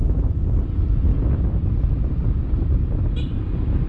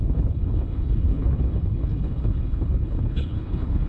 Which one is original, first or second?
first